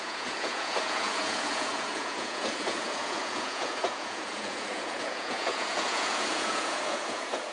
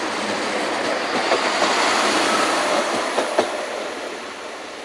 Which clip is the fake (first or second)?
first